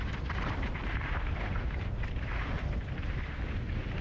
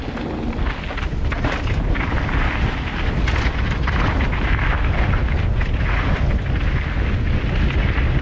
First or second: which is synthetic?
first